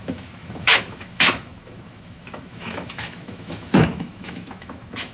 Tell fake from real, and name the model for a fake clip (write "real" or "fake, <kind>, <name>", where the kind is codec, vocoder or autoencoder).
fake, autoencoder, DAC-VAE